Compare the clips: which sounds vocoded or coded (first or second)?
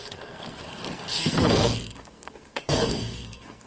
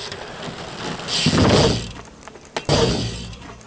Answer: first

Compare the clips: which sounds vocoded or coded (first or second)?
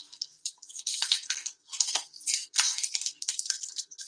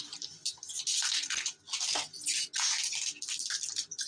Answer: first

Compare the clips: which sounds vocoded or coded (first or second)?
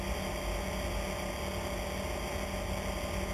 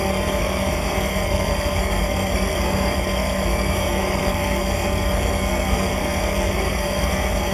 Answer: second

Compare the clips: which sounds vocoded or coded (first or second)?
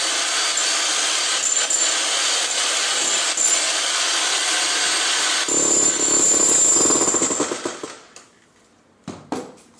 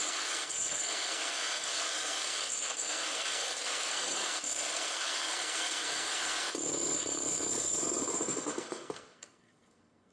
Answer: second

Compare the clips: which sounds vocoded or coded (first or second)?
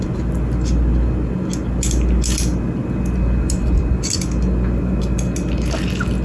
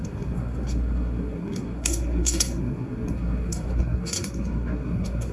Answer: second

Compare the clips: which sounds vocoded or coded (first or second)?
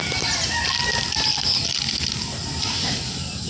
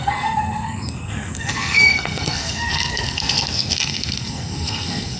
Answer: second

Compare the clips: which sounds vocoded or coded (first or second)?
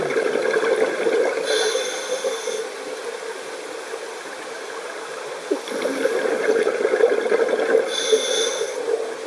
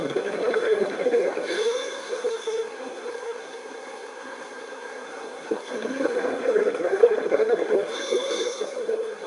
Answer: second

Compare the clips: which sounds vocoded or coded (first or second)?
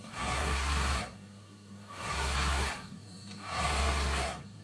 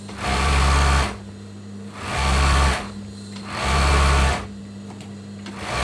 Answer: first